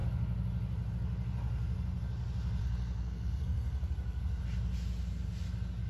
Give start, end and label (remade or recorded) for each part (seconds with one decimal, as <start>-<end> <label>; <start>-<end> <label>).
0.0-2.6 recorded; 2.6-4.4 remade; 4.4-5.9 recorded